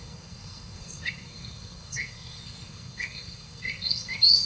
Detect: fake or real fake